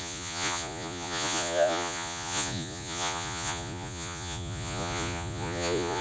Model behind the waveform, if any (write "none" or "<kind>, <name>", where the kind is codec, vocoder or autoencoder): vocoder, Vocos